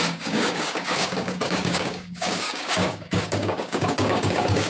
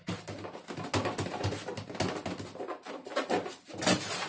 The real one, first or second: second